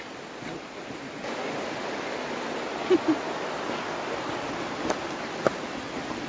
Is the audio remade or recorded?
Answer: recorded